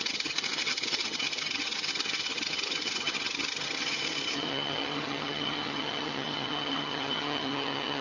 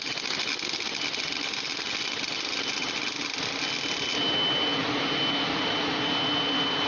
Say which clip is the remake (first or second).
first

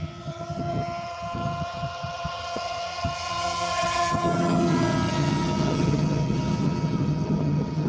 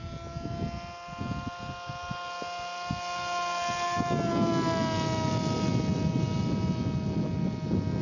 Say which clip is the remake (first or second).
first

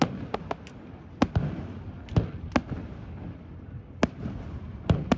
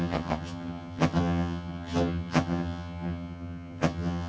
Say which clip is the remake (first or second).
second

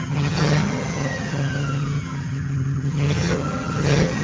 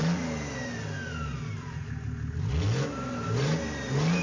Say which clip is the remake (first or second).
first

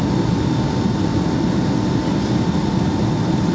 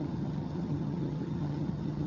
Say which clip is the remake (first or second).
second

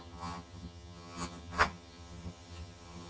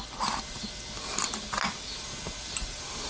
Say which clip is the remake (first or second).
first